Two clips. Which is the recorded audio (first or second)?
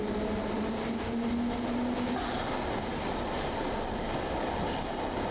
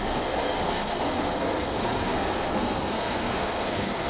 first